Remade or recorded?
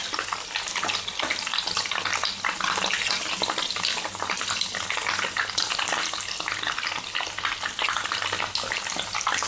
recorded